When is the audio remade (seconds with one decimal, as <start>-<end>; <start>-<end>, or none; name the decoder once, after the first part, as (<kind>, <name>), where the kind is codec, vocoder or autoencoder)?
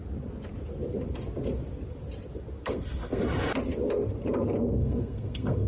2.6-3.2 (codec, SNAC); 4.8-5.7